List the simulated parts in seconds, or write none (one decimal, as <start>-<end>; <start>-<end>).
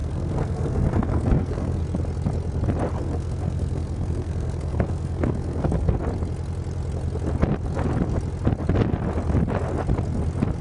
0.0-1.8; 3.0-6.0